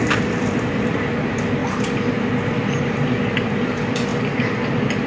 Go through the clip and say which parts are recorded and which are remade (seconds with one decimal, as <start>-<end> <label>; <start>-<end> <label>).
0.0-4.1 remade; 4.1-5.1 recorded